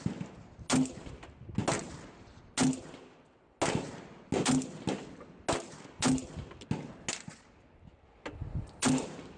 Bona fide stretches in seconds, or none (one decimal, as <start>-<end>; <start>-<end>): 0.0-9.4